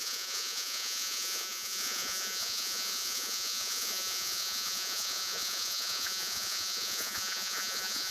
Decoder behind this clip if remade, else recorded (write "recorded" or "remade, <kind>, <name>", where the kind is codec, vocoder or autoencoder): remade, vocoder, Vocos